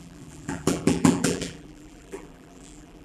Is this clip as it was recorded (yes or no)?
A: no